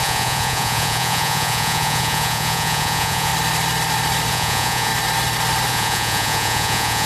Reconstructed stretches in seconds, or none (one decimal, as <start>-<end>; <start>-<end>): 0.0-3.3; 4.3-4.9; 5.7-7.1